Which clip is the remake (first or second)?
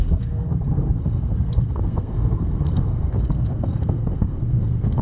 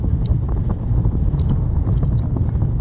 first